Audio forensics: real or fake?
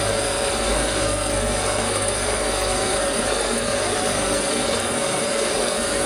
fake